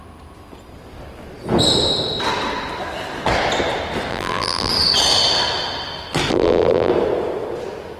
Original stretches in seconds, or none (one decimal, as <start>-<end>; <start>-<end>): 0.0-4.1; 4.7-6.3; 6.9-8.0